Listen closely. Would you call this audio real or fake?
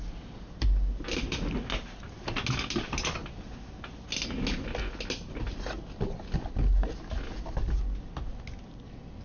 real